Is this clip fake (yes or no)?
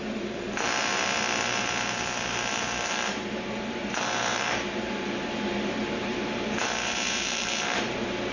yes